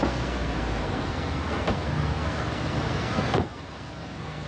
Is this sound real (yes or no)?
no